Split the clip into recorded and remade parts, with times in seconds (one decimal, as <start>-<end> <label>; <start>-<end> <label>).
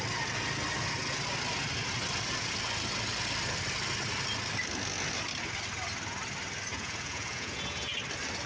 0.0-6.7 recorded; 6.7-7.9 remade; 7.9-8.5 recorded